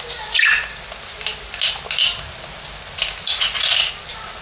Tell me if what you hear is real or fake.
real